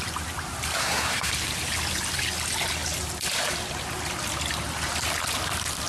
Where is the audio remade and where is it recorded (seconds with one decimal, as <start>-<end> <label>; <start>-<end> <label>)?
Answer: 0.0-0.8 recorded; 0.8-1.3 remade; 1.3-5.9 recorded

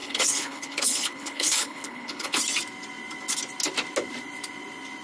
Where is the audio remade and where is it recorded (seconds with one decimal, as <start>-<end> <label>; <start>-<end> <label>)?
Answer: 0.0-2.4 remade; 2.4-5.0 recorded

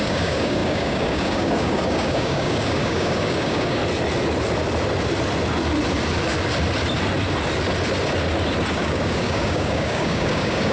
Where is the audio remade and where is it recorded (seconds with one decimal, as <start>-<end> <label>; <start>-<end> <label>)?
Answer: 0.0-3.8 remade; 3.8-8.7 recorded; 8.7-10.7 remade

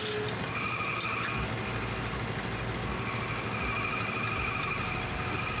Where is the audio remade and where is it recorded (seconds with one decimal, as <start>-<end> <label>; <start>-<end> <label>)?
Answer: 0.0-5.6 recorded

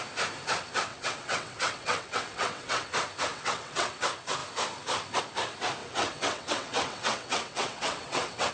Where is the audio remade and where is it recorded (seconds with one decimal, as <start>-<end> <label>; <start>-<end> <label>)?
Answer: 0.0-0.9 recorded; 0.9-2.9 remade; 2.9-3.3 recorded; 3.3-3.9 remade; 3.9-5.8 recorded; 5.8-8.5 remade

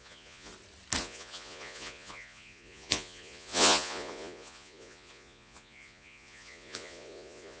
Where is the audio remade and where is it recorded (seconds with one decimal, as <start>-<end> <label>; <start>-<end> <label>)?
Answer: 0.0-0.5 remade; 0.5-1.0 recorded; 1.0-7.6 remade